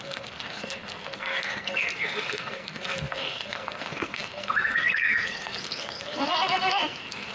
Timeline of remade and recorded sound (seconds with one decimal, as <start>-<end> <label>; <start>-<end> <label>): 0.0-7.3 remade